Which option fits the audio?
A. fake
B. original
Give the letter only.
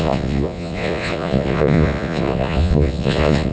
A